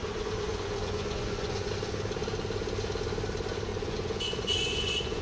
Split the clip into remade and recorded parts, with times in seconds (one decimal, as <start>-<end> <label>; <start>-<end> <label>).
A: 0.0-1.7 remade; 1.7-3.7 recorded; 3.7-5.2 remade